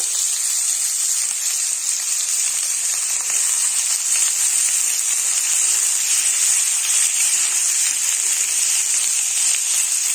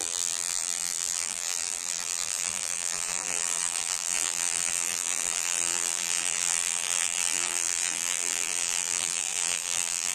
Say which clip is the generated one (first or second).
second